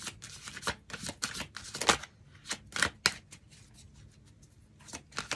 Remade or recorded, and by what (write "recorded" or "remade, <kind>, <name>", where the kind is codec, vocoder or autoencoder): recorded